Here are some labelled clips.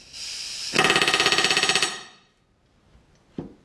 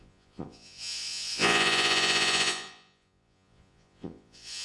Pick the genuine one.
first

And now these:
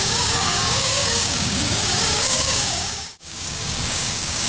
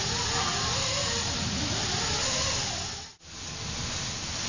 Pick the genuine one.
second